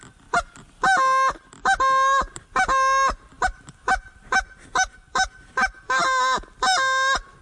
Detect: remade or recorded recorded